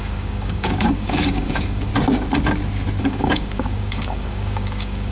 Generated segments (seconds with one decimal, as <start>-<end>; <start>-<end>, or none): 0.0-1.9; 3.0-5.1